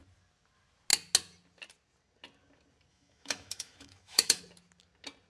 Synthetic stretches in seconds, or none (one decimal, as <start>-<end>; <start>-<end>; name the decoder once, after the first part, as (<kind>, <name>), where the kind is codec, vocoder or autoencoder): 2.9-4.4 (autoencoder, DAC-VAE)